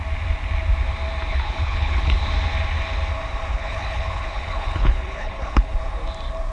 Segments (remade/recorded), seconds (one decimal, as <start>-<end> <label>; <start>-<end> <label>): 0.0-1.3 recorded; 1.3-2.2 remade; 2.2-3.5 recorded; 3.5-5.7 remade; 5.7-6.5 recorded